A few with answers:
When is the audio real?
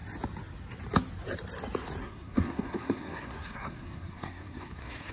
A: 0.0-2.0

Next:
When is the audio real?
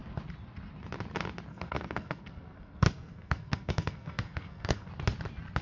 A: 0.0-1.5; 4.9-5.6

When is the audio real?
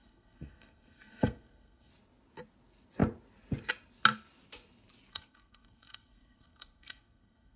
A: 1.9-5.1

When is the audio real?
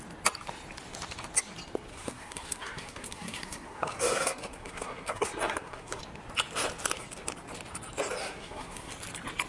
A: 0.0-1.9; 6.0-8.2; 8.9-9.5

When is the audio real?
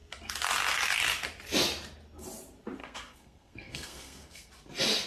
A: 0.0-2.8; 4.5-5.1